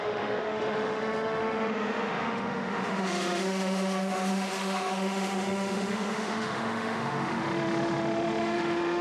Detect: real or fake fake